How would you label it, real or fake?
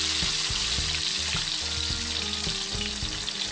real